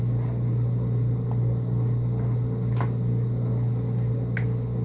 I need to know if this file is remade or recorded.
recorded